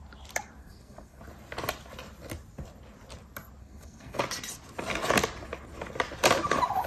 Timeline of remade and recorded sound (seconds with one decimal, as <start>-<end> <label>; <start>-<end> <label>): 0.0-0.6 recorded; 0.6-1.2 remade; 1.2-3.6 recorded; 3.6-4.2 remade; 4.2-6.9 recorded